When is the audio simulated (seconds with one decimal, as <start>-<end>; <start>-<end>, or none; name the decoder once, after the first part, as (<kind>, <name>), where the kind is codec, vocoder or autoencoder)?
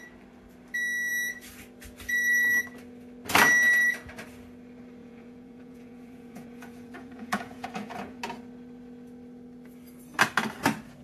5.0-8.2 (vocoder, Vocos)